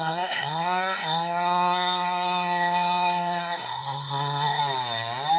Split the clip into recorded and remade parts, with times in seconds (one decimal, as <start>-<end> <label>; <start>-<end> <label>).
0.0-4.6 remade; 4.6-5.4 recorded